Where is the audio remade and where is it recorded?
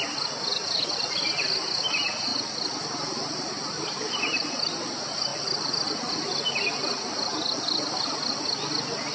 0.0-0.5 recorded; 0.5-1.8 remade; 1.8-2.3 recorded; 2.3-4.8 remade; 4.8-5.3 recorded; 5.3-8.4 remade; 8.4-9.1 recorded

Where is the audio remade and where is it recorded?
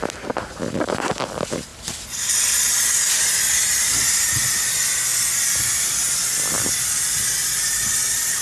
0.0-5.1 recorded; 5.1-6.9 remade; 6.9-8.4 recorded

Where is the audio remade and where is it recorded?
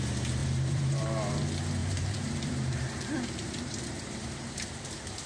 0.0-0.4 recorded; 0.4-1.4 remade; 1.4-1.8 recorded; 1.8-5.3 remade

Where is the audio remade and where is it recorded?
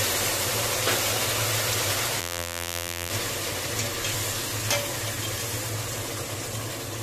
0.0-2.2 recorded; 2.2-3.1 remade; 3.1-7.0 recorded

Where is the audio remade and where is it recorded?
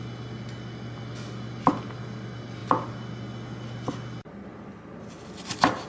0.0-5.9 recorded